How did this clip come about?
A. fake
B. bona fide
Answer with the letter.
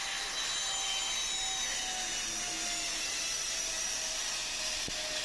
B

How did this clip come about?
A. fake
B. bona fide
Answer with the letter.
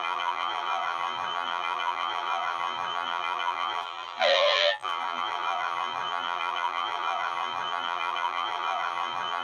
A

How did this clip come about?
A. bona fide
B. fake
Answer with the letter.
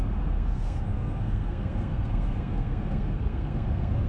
B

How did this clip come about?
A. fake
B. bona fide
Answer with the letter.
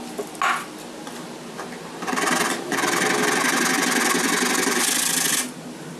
B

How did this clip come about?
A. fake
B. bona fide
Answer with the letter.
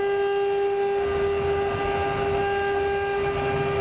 B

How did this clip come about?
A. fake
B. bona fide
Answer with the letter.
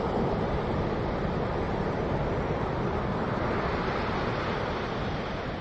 B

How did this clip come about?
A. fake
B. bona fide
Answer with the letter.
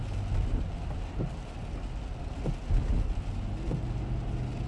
B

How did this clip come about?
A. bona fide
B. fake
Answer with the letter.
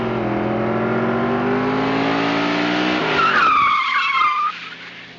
A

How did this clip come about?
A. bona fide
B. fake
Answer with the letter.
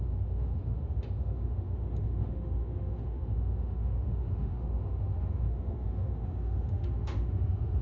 B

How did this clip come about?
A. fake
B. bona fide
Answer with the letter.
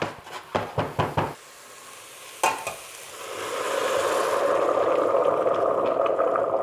B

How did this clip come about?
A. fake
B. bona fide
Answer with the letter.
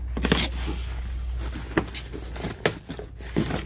B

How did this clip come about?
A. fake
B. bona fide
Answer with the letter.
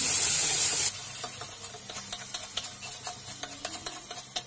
B